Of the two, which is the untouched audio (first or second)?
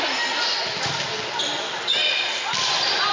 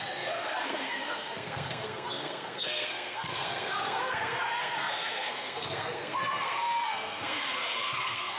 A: first